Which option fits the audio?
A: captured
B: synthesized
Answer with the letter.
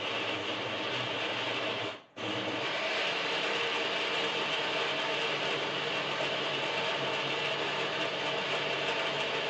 A